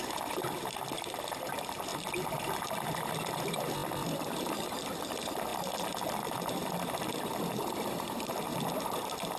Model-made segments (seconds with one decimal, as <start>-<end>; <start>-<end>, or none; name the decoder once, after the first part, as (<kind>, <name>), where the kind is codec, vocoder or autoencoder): 0.0-1.9 (vocoder, BigVGAN v2); 3.4-5.5; 6.5-9.4